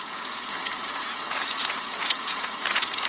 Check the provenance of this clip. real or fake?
fake